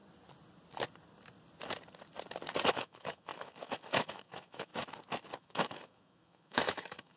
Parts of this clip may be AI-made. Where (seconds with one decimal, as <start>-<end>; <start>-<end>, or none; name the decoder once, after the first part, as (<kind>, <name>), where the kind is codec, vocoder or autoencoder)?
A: 2.7-4.7 (autoencoder, DAC-VAE); 5.4-7.2